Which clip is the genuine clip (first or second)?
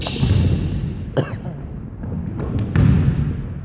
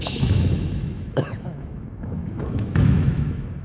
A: first